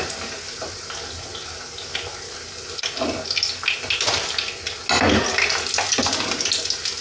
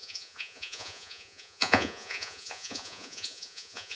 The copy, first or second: second